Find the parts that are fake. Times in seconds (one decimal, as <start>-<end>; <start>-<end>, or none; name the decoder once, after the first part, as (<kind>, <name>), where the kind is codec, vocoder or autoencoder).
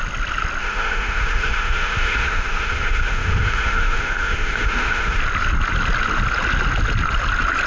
0.6-5.2 (autoencoder, DAC-VAE)